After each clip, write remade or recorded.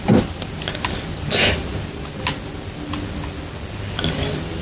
recorded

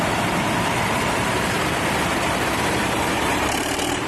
remade